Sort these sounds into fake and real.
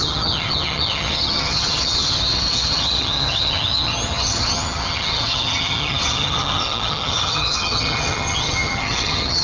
fake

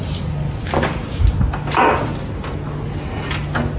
real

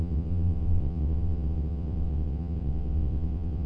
fake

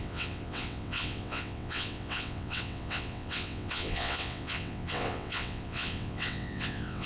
fake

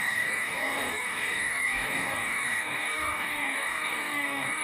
fake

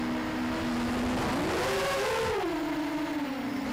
real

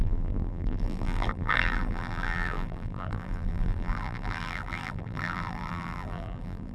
fake